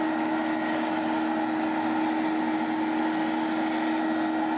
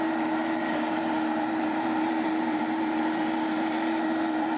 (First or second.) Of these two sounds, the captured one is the first